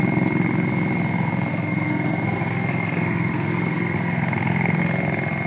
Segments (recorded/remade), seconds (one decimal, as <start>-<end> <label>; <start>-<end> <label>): 0.0-1.5 recorded; 1.5-4.8 remade; 4.8-5.5 recorded